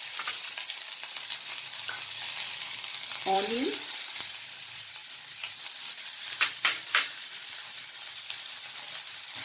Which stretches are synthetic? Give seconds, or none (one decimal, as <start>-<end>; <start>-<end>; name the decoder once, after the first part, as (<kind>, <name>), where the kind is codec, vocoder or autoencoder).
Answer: 0.0-5.0 (vocoder, BigVGAN v2); 5.6-9.4